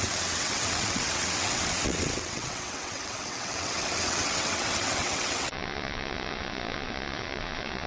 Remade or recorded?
remade